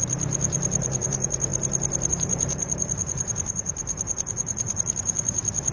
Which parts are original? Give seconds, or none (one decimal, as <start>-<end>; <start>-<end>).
1.5-2.1